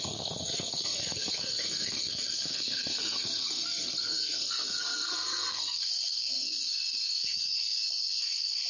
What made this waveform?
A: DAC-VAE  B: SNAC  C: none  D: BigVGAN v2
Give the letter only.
B